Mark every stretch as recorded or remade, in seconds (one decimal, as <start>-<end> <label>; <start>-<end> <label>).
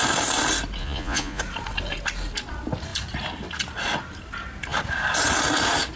0.0-0.8 recorded; 0.8-1.4 remade; 1.4-6.0 recorded